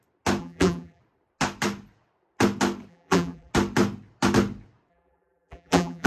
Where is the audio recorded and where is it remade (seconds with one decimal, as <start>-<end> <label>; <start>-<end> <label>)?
0.0-0.4 recorded; 0.4-1.0 remade; 1.0-2.9 recorded; 2.9-3.5 remade; 3.5-4.9 recorded; 4.9-6.1 remade